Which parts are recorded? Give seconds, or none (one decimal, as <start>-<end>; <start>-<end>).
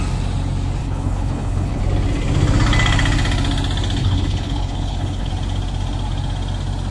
0.0-0.8; 1.8-4.0; 5.3-6.9